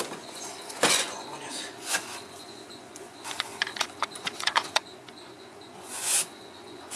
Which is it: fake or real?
fake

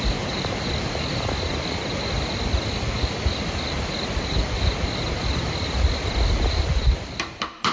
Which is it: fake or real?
real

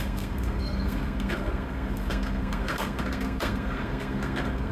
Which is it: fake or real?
fake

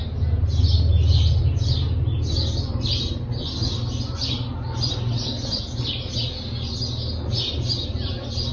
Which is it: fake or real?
real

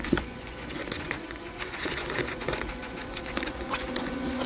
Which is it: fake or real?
fake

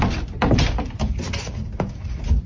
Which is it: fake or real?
fake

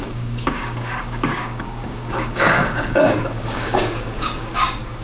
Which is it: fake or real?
fake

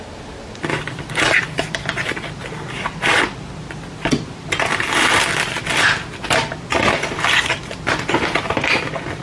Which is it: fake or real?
real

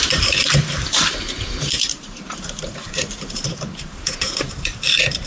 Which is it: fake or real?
fake